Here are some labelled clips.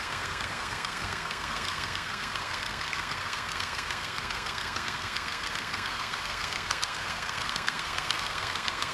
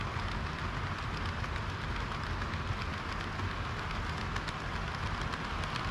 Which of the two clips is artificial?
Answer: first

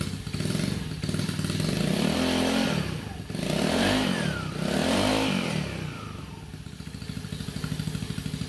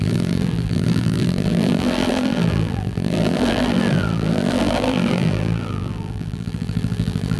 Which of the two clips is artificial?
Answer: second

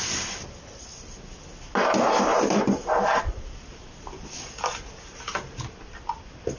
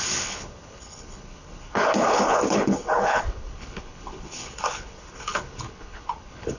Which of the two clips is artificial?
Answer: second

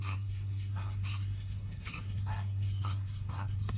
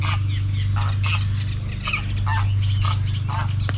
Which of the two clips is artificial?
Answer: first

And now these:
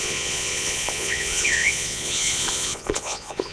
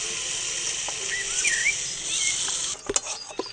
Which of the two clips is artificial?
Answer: first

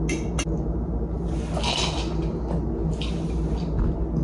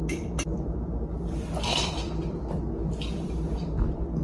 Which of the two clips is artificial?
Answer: second